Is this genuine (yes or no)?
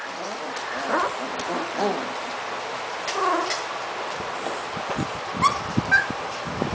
yes